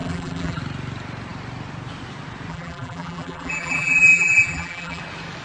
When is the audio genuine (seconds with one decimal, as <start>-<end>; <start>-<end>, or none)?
0.6-2.5; 5.0-5.4